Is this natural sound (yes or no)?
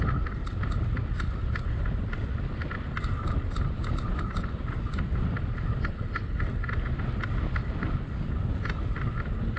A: yes